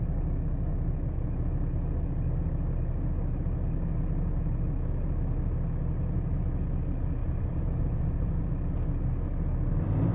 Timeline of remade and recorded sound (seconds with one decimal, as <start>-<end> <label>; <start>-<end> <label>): 0.0-7.2 recorded; 7.2-8.5 remade; 8.5-10.1 recorded